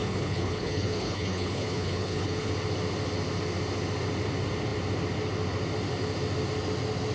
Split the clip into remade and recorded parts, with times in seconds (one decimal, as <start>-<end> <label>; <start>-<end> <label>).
0.0-2.5 remade; 2.5-7.1 recorded